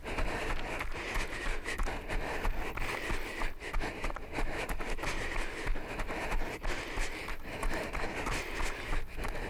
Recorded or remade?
recorded